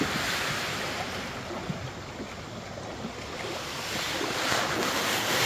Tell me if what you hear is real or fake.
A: real